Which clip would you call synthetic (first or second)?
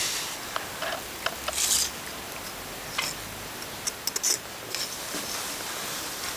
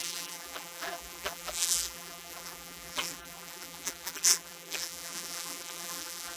second